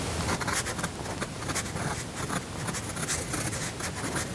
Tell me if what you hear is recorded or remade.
recorded